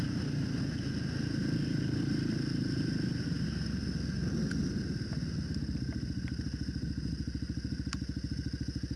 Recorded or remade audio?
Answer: recorded